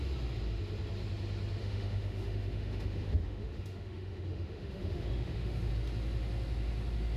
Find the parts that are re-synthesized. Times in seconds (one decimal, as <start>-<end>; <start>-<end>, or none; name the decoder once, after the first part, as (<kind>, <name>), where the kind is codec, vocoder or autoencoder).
1.6-5.7 (autoencoder, DAC-VAE)